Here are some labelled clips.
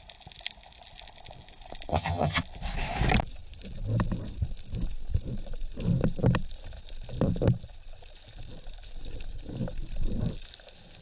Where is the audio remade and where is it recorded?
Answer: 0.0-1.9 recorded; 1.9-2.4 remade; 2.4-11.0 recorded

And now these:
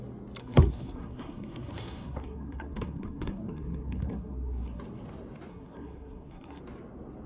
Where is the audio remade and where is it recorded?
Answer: 0.0-0.4 recorded; 0.4-4.8 remade; 4.8-5.5 recorded; 5.5-6.6 remade; 6.6-7.3 recorded

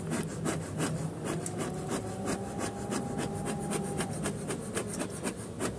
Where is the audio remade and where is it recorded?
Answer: 0.0-0.8 recorded; 0.8-4.3 remade; 4.3-5.8 recorded